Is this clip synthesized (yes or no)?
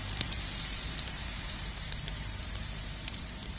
yes